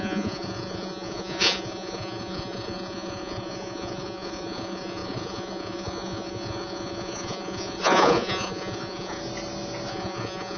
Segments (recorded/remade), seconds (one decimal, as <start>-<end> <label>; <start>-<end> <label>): 0.0-9.2 remade; 9.2-9.9 recorded; 9.9-10.6 remade